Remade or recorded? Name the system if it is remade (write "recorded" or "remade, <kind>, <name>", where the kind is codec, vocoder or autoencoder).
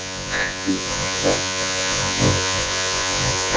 remade, vocoder, Vocos